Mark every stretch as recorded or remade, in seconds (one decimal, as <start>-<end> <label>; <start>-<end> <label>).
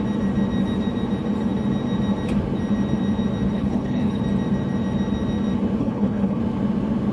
0.0-3.5 recorded; 3.5-4.2 remade; 4.2-5.8 recorded; 5.8-6.4 remade; 6.4-7.1 recorded